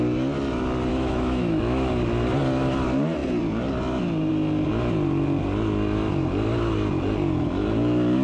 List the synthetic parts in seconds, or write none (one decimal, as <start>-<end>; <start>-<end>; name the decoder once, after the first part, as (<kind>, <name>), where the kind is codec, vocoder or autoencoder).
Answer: 0.9-1.9 (autoencoder, DAC-VAE)